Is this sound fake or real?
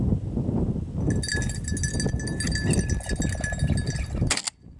real